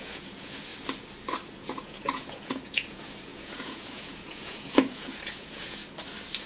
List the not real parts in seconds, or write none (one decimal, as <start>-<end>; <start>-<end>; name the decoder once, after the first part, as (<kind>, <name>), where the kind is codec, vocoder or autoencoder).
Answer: 0.0-0.7 (vocoder, Vocos); 1.5-5.8